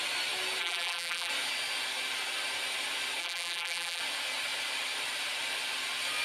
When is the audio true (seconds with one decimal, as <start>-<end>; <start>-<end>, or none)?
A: 0.0-0.6; 1.3-3.2; 4.0-6.2